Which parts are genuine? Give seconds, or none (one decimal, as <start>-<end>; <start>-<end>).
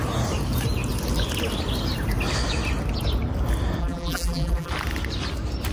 0.0-3.8; 4.7-5.7